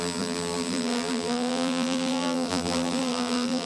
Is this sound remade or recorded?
remade